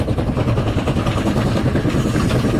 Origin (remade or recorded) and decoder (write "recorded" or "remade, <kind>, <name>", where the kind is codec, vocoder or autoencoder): recorded